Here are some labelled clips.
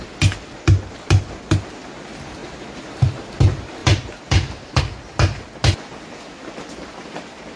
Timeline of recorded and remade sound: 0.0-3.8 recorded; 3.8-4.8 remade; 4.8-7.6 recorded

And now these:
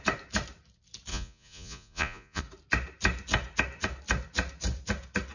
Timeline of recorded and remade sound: 0.0-1.1 recorded; 1.1-2.4 remade; 2.4-5.3 recorded